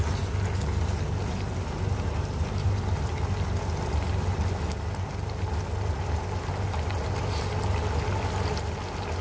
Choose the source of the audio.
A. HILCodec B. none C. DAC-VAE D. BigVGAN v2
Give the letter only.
B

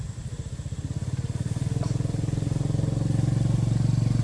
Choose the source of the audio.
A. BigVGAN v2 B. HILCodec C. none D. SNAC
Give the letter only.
C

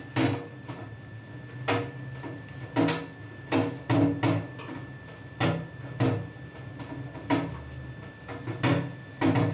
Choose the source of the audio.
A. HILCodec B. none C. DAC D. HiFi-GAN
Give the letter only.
B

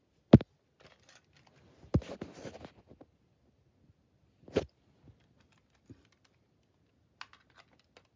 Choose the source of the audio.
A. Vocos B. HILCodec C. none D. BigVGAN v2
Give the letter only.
C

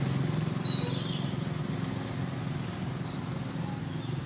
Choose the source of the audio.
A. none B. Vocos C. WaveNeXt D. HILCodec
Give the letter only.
A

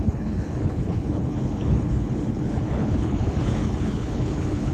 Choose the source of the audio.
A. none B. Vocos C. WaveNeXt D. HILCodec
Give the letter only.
D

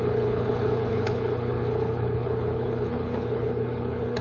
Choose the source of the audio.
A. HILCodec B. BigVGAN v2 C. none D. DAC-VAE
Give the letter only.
A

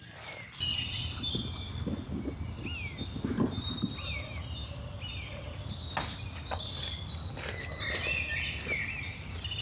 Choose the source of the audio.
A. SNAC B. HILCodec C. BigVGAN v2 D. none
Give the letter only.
D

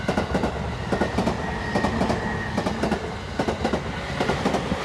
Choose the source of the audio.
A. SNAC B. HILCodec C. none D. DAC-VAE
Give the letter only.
C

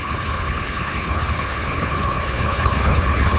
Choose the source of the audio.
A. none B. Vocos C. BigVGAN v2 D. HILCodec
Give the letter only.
D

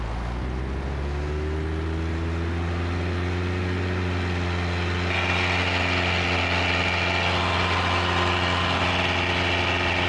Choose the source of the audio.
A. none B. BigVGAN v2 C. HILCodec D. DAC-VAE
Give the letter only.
A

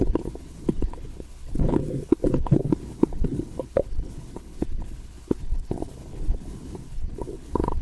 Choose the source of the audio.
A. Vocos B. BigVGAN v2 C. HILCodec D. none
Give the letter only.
C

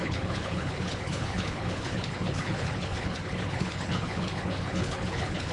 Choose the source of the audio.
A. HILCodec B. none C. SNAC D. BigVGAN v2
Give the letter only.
A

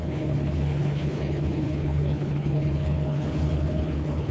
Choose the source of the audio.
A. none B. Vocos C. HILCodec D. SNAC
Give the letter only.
C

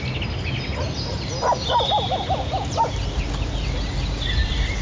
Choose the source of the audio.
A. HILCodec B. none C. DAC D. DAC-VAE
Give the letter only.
B